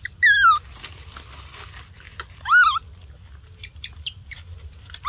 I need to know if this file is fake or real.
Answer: real